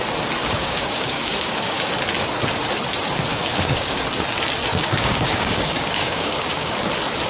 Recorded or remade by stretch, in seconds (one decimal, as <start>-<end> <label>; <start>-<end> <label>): 0.0-0.4 recorded; 0.4-1.9 remade; 1.9-3.3 recorded; 3.3-4.0 remade; 4.0-4.7 recorded; 4.7-6.7 remade; 6.7-7.3 recorded